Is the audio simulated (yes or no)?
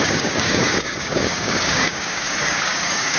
yes